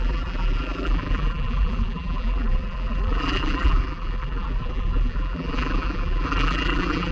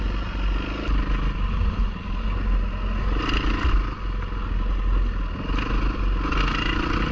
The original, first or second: second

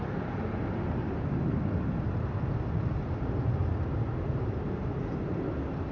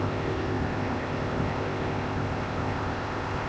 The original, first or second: first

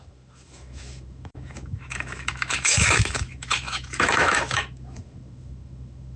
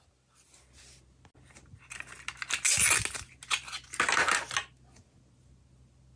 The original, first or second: second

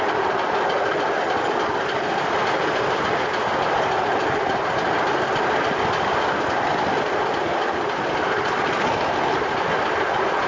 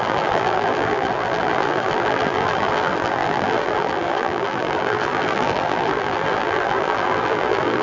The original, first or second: first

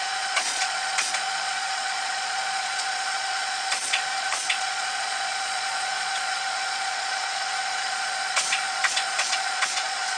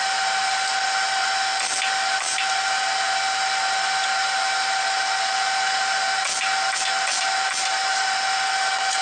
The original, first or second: second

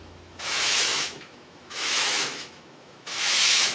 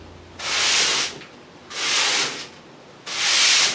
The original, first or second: second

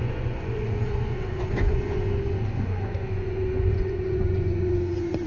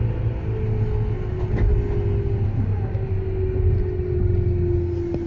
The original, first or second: second